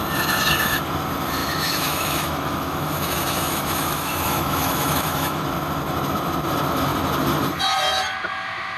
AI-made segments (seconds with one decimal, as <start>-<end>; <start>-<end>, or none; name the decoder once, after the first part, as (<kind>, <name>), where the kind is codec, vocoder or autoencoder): 1.4-5.4 (autoencoder, DAC-VAE)